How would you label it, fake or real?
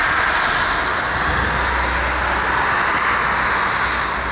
real